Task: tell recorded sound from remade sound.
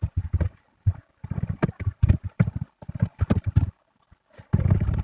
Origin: recorded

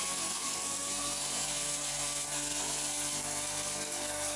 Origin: remade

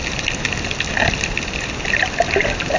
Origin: recorded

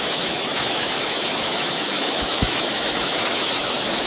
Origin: remade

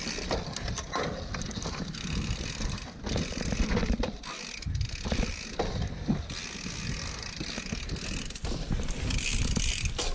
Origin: recorded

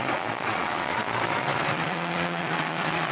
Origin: remade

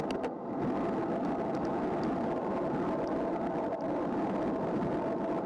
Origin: recorded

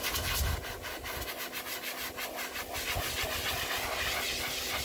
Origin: recorded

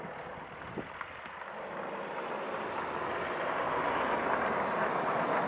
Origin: recorded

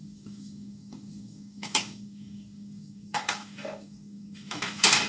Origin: remade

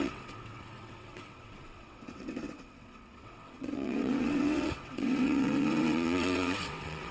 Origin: remade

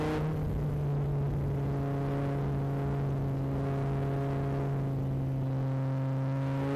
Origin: recorded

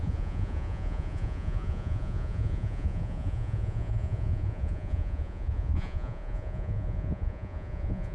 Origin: remade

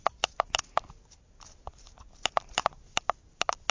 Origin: recorded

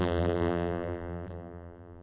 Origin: remade